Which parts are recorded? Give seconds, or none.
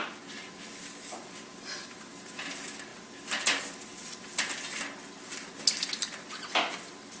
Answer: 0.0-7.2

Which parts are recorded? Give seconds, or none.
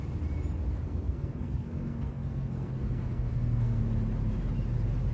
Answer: 0.0-0.7; 3.8-5.1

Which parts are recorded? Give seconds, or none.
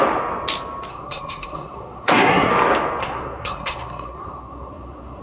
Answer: 0.0-0.9; 2.5-3.0